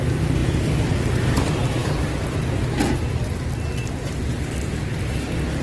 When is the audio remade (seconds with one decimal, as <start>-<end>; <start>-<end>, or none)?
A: 0.4-1.2